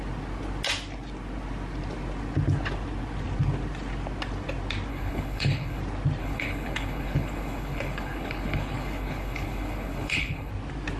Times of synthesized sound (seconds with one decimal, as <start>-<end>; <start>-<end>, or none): 4.9-5.8; 6.2-10.5